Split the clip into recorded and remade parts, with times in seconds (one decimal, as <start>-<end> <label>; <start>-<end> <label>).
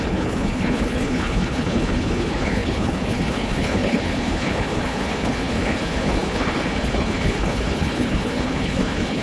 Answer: 0.0-9.2 remade